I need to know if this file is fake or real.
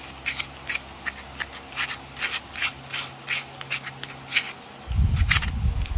real